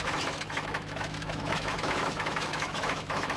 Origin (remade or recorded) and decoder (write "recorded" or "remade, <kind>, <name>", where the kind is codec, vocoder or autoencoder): remade, autoencoder, DAC-VAE